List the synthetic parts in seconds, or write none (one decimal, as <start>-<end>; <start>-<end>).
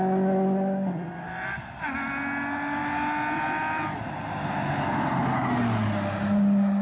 none